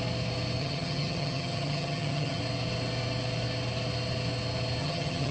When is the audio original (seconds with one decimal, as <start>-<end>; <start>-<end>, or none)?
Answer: 0.0-0.6; 2.4-4.8